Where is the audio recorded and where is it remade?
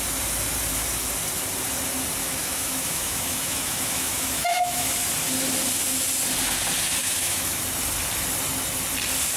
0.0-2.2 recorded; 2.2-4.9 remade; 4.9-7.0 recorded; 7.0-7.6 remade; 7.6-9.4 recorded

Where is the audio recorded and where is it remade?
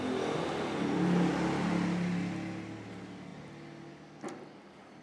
0.0-5.0 recorded